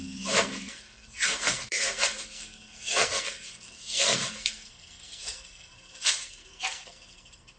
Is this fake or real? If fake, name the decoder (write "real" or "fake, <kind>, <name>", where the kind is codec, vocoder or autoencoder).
fake, codec, SNAC